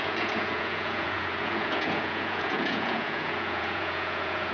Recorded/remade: remade